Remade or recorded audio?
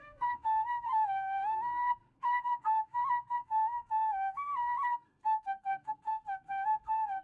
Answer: remade